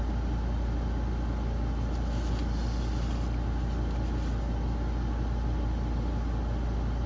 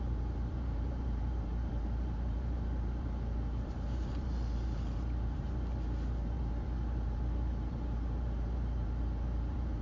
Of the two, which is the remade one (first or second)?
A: second